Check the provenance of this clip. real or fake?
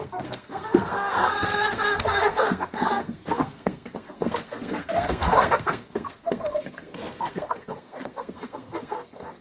fake